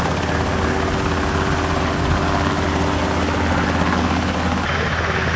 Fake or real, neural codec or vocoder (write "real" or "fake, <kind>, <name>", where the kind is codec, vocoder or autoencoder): real